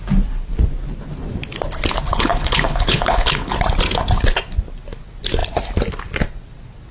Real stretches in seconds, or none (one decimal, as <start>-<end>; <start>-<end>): 0.0-2.1; 3.5-6.9